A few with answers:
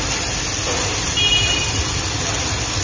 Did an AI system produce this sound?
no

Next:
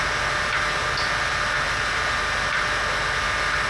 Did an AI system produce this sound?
no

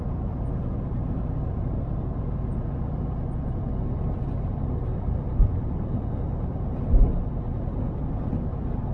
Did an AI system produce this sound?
yes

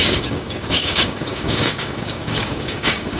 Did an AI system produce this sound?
yes